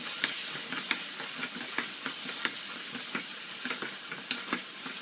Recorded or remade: recorded